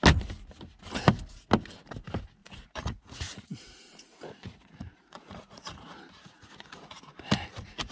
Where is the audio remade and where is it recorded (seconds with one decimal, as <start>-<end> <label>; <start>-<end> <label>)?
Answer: 0.0-2.4 recorded; 2.4-7.1 remade; 7.1-7.9 recorded